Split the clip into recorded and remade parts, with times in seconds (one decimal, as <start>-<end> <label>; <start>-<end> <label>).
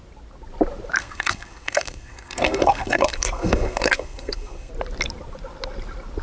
0.0-1.0 recorded; 1.0-4.7 remade; 4.7-6.2 recorded